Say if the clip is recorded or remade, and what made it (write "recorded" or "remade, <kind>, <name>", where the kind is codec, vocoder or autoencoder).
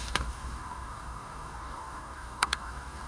remade, codec, DAC